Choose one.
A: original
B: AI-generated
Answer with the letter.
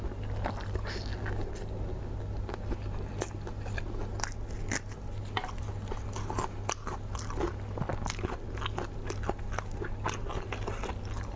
A